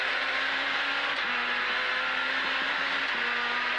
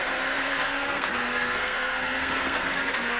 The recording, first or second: first